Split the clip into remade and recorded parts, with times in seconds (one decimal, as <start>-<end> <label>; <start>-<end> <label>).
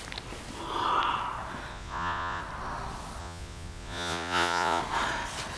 0.0-1.7 recorded; 1.7-2.4 remade; 2.4-3.2 recorded; 3.2-4.8 remade; 4.8-5.6 recorded